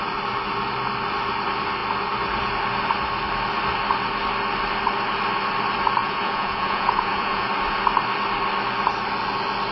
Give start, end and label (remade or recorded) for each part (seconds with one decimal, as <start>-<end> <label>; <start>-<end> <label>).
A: 0.0-6.0 recorded; 6.0-7.5 remade; 7.5-9.7 recorded